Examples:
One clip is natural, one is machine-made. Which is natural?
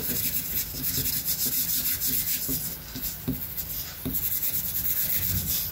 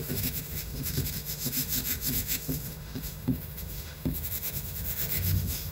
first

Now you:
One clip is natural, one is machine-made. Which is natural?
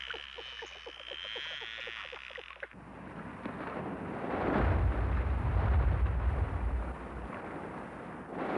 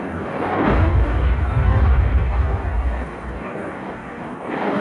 first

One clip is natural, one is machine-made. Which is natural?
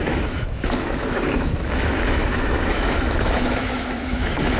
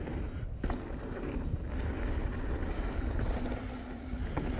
second